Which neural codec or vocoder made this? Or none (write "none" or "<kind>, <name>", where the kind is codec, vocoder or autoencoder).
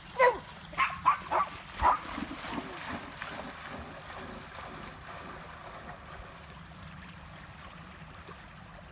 none